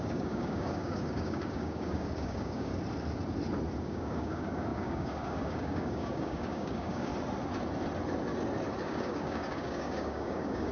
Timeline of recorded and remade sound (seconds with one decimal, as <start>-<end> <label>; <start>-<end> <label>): 0.0-2.7 remade; 2.7-3.8 recorded; 3.8-7.1 remade; 7.1-8.8 recorded; 8.8-10.7 remade